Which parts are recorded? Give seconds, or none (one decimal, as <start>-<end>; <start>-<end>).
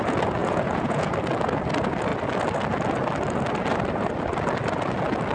0.0-0.4; 1.1-5.3